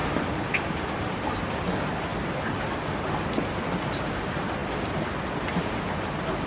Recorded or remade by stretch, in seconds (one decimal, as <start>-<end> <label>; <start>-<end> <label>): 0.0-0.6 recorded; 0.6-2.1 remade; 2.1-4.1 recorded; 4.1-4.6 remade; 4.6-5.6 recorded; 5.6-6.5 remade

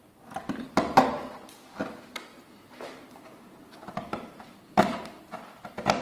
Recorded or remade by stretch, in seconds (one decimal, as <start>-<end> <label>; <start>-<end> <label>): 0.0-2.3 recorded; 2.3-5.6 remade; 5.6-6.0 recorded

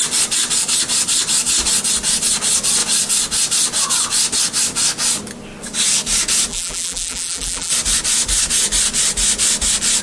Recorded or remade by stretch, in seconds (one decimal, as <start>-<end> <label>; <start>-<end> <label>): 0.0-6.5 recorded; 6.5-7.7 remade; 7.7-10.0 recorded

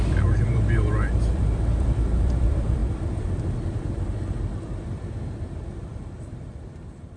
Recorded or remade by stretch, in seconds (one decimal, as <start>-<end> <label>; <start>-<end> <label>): 0.0-7.2 remade